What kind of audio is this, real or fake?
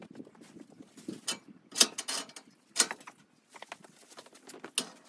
real